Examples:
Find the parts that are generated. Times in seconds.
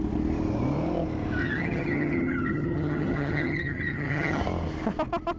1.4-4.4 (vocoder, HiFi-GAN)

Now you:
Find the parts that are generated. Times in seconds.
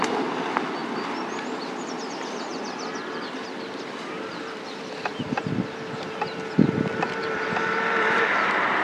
0.0-0.8 (vocoder, BigVGAN v2); 1.7-8.8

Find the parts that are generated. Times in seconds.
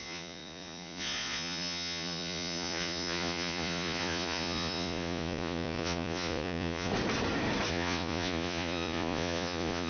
0.0-6.9 (vocoder, Vocos); 7.7-9.9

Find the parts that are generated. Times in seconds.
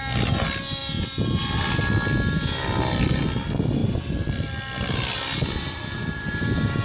none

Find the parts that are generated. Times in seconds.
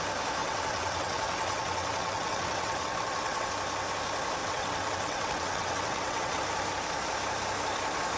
0.4-3.5 (vocoder, WaveNeXt); 4.4-6.4